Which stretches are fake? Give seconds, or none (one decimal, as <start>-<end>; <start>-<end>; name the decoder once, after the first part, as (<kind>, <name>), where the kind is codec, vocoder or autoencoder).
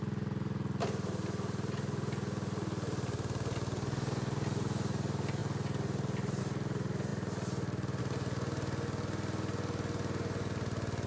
none